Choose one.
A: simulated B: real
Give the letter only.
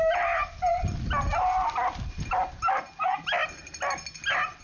B